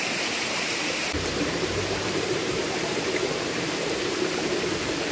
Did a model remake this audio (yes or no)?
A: yes